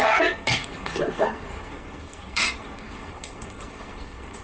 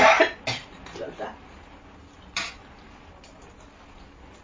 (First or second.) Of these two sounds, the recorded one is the second